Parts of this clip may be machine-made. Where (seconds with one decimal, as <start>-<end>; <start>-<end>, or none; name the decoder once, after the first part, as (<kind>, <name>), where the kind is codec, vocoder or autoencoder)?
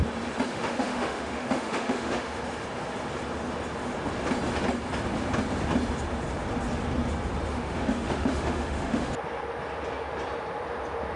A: 0.5-2.4 (autoencoder, DAC-VAE); 7.5-9.1